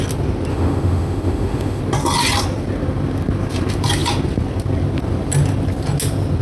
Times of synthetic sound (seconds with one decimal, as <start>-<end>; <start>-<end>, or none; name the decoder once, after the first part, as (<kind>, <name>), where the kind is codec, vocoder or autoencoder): 0.5-1.8 (autoencoder, DAC-VAE)